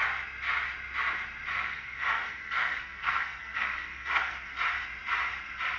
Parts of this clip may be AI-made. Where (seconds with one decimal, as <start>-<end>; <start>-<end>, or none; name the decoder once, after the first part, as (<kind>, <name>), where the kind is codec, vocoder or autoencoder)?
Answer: 1.5-4.6 (codec, SNAC)